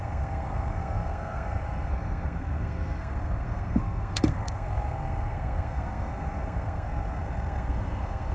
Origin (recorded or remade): remade